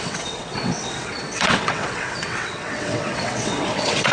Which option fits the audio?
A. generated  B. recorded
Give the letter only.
A